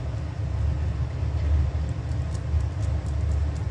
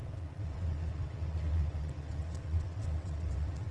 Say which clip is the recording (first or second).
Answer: first